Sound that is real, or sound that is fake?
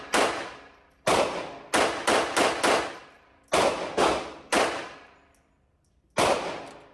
real